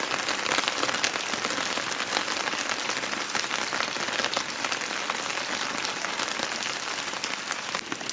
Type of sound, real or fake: real